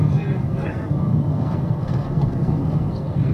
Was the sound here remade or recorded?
remade